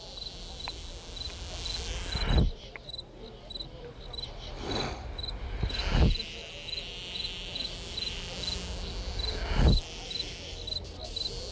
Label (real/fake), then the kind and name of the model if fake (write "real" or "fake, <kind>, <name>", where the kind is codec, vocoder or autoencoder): real